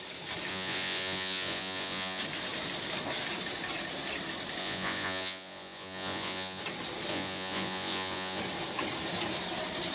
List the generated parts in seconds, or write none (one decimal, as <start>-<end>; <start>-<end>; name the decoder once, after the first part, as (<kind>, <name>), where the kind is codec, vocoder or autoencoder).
0.5-2.2 (vocoder, Vocos); 4.6-6.6; 7.1-8.4